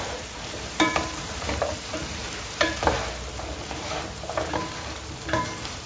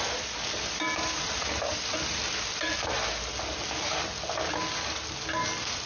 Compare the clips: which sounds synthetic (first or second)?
first